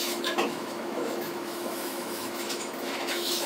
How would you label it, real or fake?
fake